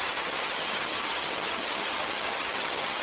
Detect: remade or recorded remade